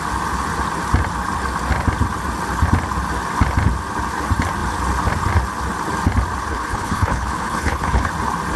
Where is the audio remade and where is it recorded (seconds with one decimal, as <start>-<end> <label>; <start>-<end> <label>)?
0.0-6.5 recorded; 6.5-8.1 remade; 8.1-8.6 recorded